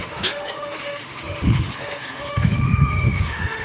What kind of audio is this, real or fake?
fake